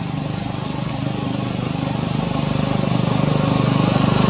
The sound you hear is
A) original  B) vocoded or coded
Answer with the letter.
A